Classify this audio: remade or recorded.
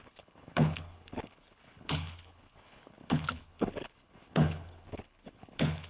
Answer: remade